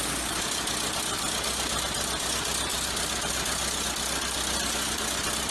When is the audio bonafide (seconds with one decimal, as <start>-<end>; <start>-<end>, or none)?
0.0-5.5